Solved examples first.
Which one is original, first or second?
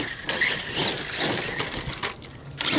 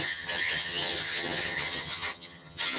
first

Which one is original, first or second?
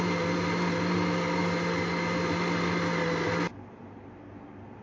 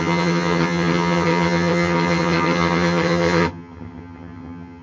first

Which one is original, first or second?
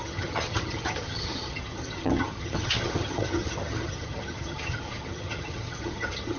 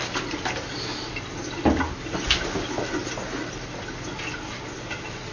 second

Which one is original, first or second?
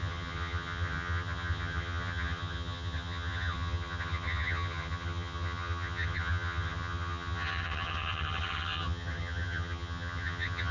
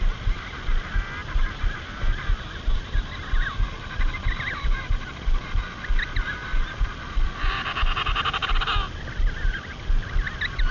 second